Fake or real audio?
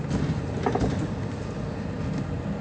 real